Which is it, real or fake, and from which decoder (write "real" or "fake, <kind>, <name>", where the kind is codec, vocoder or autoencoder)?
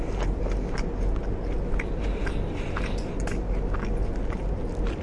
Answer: real